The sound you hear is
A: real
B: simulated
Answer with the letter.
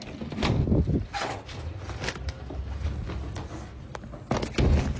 A